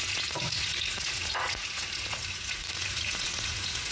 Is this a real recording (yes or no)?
no